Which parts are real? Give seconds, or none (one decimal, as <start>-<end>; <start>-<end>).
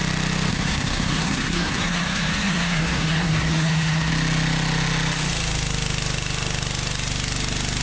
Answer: 0.0-0.5; 4.1-7.8